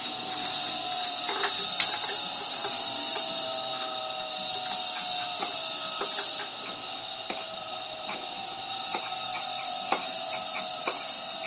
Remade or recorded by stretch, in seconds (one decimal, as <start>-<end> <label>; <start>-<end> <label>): 0.0-3.7 remade; 3.7-6.9 recorded; 6.9-9.4 remade; 9.4-9.9 recorded; 9.9-11.5 remade